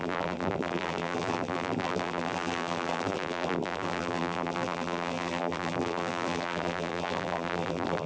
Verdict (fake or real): fake